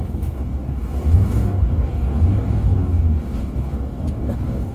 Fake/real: fake